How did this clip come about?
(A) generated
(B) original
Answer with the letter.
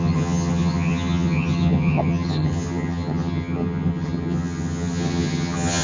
A